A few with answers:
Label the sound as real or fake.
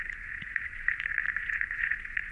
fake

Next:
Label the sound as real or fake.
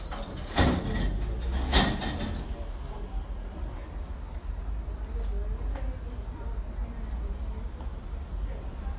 real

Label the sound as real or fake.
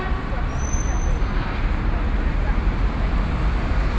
real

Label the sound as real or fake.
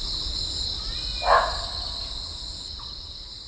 real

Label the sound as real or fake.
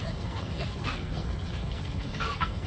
fake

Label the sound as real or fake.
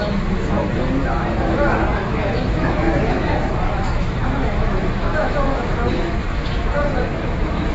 fake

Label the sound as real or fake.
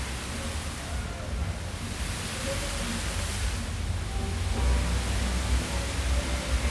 real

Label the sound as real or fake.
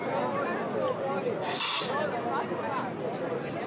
real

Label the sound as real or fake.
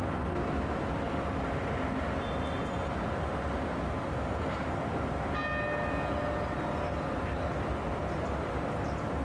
real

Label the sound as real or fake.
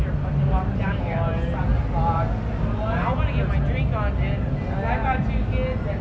real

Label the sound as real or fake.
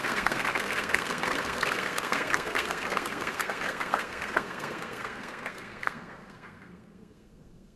fake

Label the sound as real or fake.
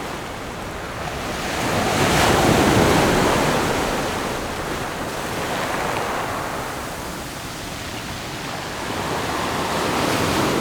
real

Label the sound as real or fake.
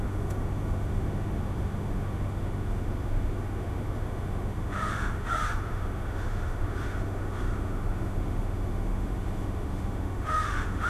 fake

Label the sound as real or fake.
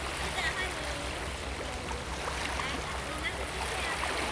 real